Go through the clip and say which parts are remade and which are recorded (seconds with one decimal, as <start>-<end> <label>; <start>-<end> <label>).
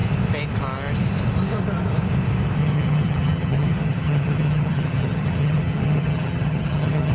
0.0-2.6 recorded; 2.6-7.1 remade